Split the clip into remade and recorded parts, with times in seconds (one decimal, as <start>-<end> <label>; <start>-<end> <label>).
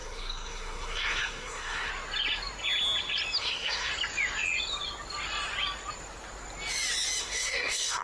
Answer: 0.0-1.9 remade; 1.9-3.4 recorded; 3.4-3.9 remade; 3.9-7.2 recorded; 7.2-8.0 remade